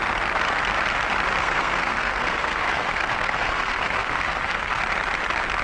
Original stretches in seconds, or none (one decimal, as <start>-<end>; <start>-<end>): 0.0-1.4; 4.8-5.6